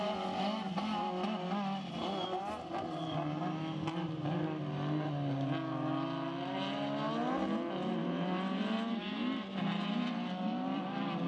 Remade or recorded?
recorded